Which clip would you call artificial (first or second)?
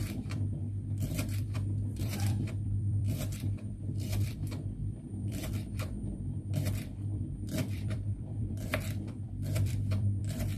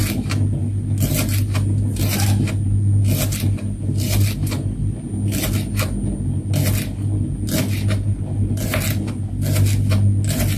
first